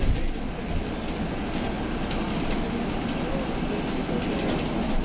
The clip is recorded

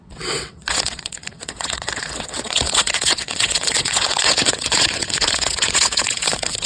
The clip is remade